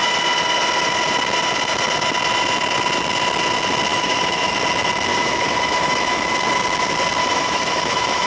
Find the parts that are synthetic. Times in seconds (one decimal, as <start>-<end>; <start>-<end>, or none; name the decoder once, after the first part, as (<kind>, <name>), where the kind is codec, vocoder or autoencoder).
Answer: 3.9-4.5 (autoencoder, DAC-VAE); 5.1-6.3; 7.2-8.3